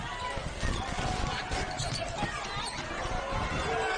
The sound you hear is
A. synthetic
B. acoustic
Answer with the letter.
B